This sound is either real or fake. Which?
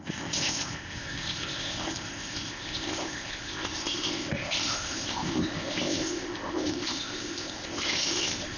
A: fake